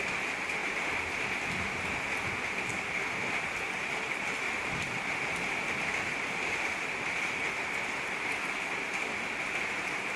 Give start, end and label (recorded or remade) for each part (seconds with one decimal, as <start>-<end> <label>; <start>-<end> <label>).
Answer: 0.0-10.2 recorded

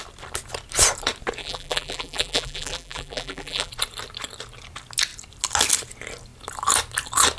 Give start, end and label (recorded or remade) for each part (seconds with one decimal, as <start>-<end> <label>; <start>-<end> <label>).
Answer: 0.0-1.4 recorded; 1.4-3.7 remade; 3.7-7.4 recorded

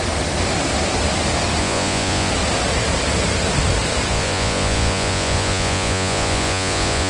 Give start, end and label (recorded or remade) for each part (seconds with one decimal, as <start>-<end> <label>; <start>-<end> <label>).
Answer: 0.0-1.6 recorded; 1.6-2.3 remade; 2.3-4.1 recorded; 4.1-7.1 remade